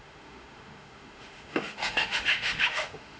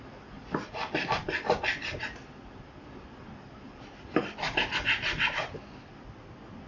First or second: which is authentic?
second